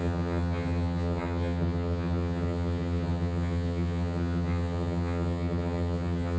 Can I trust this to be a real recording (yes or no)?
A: no